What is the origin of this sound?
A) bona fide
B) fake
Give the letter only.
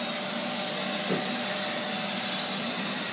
A